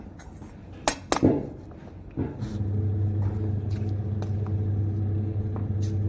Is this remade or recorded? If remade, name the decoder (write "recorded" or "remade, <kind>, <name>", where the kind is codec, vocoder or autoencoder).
recorded